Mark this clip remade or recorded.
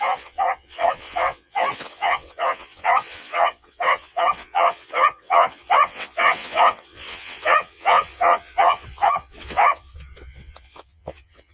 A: remade